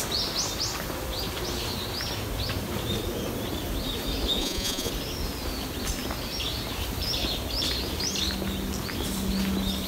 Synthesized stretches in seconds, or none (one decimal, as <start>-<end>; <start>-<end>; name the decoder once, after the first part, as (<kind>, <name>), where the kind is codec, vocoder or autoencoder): 4.4-4.9 (vocoder, Vocos)